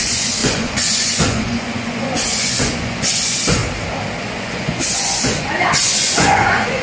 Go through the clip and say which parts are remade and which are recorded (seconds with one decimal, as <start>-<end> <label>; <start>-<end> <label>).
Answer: 0.0-3.6 remade; 3.6-4.2 recorded; 4.2-6.8 remade